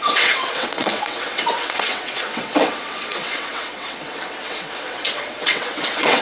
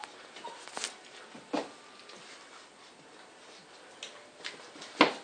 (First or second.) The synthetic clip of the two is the first